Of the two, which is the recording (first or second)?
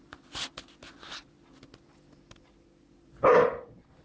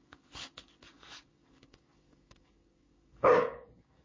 first